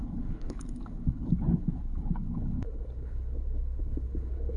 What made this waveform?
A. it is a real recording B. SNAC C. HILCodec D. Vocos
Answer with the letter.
C